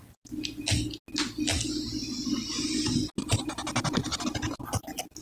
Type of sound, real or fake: real